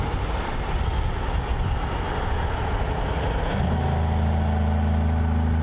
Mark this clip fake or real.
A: real